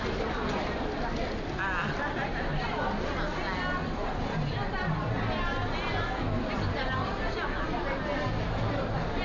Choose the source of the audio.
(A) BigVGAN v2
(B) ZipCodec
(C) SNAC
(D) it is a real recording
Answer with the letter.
D